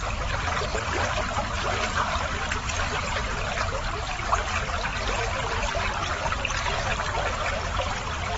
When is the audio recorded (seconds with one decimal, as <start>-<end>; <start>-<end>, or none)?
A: 0.0-0.7; 4.2-4.9; 5.5-6.9; 7.7-8.4